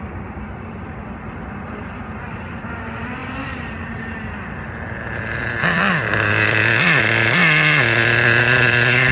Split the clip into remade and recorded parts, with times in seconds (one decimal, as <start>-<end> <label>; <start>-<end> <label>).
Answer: 0.0-7.4 remade; 7.4-8.4 recorded; 8.4-9.1 remade